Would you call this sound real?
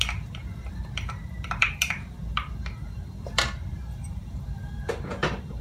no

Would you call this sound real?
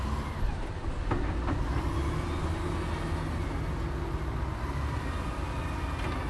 yes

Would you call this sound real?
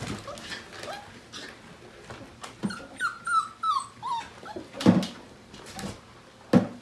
yes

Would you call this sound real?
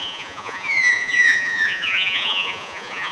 no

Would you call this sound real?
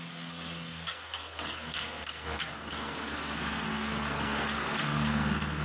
no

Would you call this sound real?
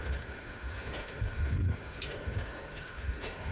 no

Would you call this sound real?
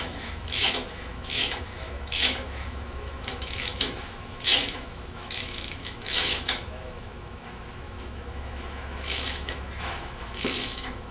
no